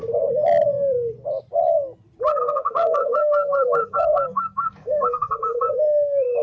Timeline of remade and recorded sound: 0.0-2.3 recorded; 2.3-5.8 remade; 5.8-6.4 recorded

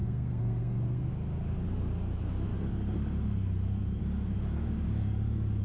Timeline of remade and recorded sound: 0.0-1.1 remade; 1.1-5.6 recorded

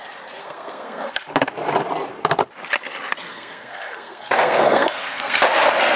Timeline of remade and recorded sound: 0.0-0.4 recorded; 0.4-1.1 remade; 1.1-3.3 recorded; 3.3-5.4 remade; 5.4-6.0 recorded

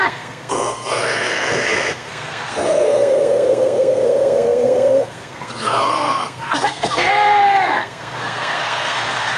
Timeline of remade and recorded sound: 0.0-9.4 remade